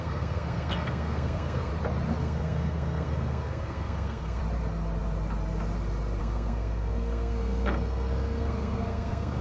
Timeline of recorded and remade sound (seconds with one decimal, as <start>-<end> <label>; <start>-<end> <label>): 0.0-1.7 remade; 1.7-2.2 recorded; 2.2-4.4 remade; 4.4-6.2 recorded; 6.2-9.4 remade